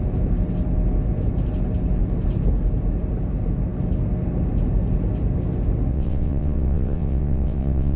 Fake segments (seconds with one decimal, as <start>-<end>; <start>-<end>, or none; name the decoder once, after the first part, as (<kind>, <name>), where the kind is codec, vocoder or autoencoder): 5.9-8.0 (vocoder, WaveNeXt)